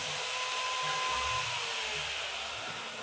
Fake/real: real